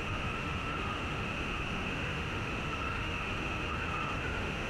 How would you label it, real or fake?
fake